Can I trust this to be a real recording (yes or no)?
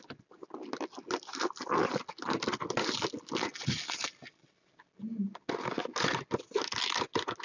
yes